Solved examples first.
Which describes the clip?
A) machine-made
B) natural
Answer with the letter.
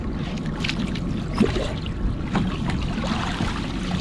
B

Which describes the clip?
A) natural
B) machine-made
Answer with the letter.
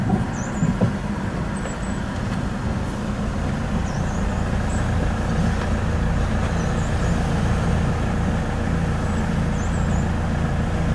A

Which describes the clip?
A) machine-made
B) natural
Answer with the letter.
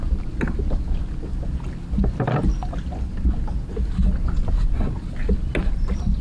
B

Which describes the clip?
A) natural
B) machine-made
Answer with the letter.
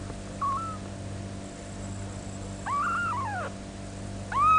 A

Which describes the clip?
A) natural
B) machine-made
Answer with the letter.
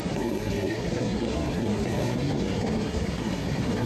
B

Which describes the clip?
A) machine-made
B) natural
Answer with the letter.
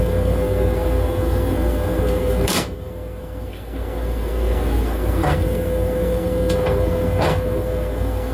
A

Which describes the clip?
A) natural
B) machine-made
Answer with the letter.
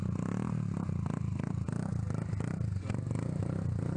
A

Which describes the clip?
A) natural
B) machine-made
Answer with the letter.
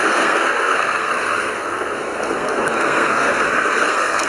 B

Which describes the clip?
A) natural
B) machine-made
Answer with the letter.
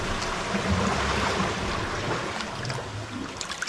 A